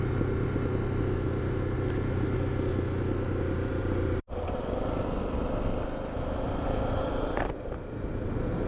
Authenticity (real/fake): real